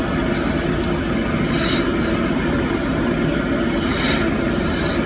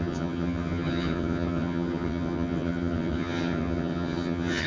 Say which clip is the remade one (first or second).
second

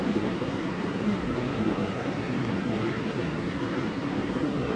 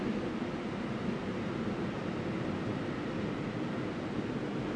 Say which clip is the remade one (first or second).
first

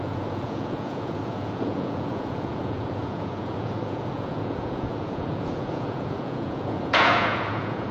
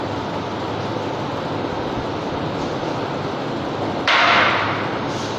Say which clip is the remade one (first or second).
first